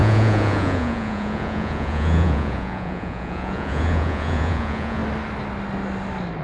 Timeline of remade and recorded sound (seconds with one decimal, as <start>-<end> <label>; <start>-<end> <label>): 0.0-5.0 remade; 5.0-6.4 recorded